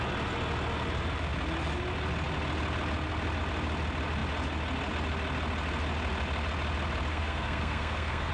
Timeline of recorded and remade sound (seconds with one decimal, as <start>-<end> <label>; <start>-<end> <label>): 0.0-7.1 recorded; 7.1-8.3 remade